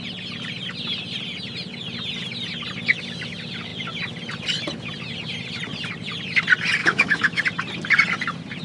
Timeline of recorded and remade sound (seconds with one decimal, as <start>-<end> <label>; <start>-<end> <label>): 0.0-6.8 recorded; 6.8-7.4 remade; 7.4-8.6 recorded